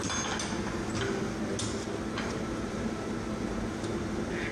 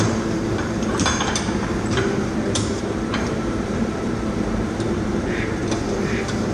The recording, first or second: first